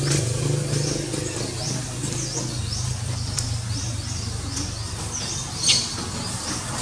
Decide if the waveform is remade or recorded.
recorded